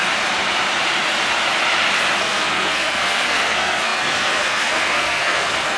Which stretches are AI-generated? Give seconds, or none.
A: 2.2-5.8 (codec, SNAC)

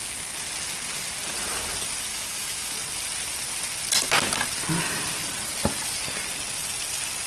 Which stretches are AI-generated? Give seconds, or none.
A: 2.1-2.7 (autoencoder, DAC-VAE)

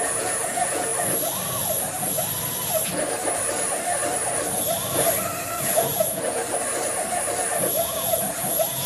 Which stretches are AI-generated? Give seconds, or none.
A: 0.0-0.9 (vocoder, Vocos); 5.5-6.4; 7.6-8.9

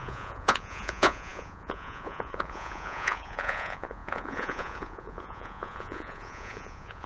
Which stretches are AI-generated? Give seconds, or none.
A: 0.0-7.1 (vocoder, Vocos)